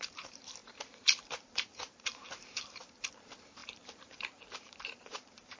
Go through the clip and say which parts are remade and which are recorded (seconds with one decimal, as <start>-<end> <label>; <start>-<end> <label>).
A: 0.0-5.6 remade